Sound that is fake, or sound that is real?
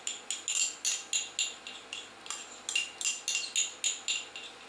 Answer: real